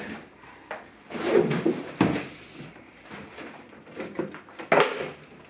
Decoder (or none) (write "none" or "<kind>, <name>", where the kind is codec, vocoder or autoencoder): none